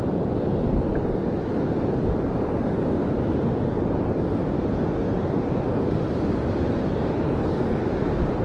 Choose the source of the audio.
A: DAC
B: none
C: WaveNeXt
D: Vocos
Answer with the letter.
B